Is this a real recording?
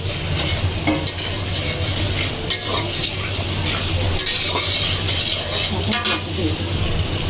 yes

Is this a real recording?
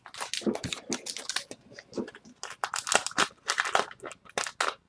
yes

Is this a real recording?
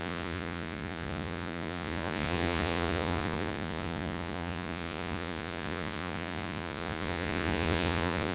no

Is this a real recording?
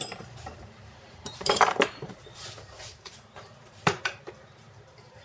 no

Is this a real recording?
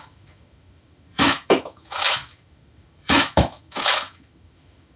no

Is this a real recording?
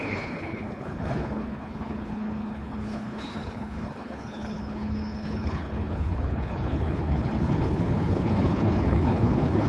no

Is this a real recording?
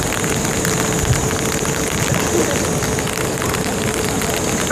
yes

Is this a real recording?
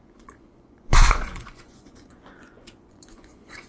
no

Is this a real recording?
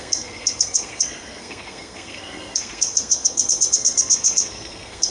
no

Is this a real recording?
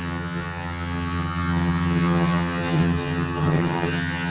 no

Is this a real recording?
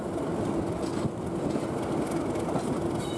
yes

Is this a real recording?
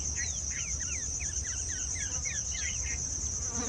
no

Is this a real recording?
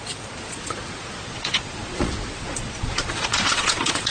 no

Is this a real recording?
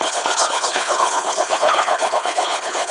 no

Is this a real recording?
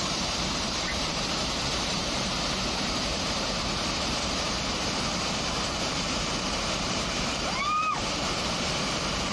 no